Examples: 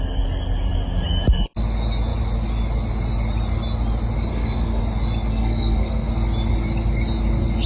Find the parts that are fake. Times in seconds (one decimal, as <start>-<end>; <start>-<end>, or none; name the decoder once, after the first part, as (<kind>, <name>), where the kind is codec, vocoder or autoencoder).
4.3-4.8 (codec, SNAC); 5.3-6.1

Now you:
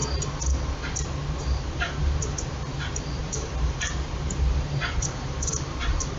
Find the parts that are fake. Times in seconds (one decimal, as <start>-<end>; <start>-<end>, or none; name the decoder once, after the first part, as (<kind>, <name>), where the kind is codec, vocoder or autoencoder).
1.4-6.2 (vocoder, BigVGAN v2)

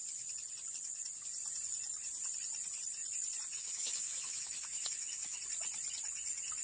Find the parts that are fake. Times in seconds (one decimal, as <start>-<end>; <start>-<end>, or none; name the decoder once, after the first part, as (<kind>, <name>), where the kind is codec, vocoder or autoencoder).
3.5-5.4 (autoencoder, DAC-VAE)